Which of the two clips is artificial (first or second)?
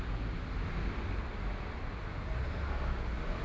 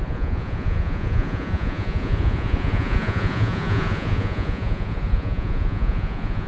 second